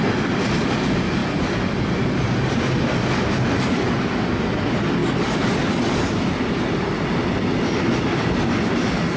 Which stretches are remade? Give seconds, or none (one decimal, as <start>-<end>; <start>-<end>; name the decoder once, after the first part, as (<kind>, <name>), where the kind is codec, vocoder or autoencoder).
none

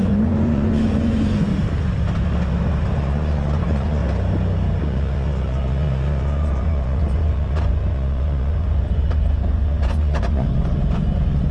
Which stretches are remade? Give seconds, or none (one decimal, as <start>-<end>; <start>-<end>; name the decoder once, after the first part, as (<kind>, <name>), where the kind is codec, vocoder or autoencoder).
0.0-1.5 (vocoder, Vocos); 2.9-4.0; 4.8-11.5

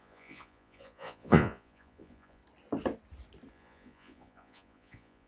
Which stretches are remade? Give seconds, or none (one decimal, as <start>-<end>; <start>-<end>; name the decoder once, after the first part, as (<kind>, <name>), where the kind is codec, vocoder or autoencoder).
0.0-2.4 (vocoder, Vocos); 3.5-5.3

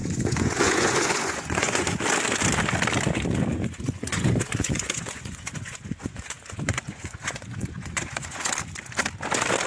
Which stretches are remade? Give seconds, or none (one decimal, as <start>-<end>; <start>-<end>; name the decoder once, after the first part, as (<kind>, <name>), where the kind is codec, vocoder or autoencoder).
0.0-2.0 (vocoder, Vocos); 3.5-8.5